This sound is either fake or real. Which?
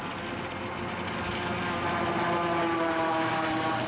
real